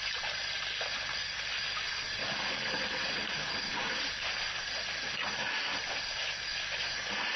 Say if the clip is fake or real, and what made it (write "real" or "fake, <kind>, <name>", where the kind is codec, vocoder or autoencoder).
real